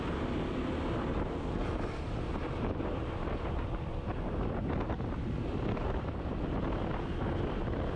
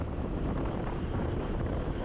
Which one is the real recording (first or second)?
first